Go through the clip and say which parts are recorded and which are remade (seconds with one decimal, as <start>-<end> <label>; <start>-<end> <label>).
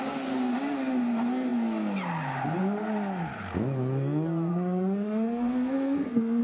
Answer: 0.0-4.5 recorded; 4.5-6.4 remade